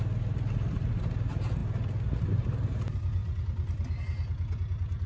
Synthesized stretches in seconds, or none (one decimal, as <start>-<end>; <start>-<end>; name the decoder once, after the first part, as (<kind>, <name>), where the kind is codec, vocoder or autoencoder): none